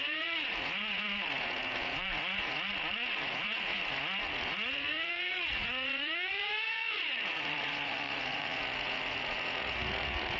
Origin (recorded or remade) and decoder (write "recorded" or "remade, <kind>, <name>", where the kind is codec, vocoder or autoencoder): remade, vocoder, Vocos